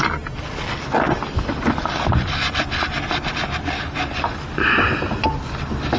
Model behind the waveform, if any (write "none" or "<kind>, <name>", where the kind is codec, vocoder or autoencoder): none